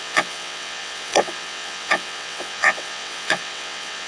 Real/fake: fake